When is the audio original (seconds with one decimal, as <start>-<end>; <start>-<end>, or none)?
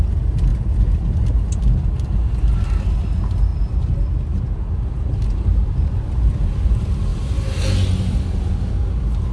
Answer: 0.0-9.3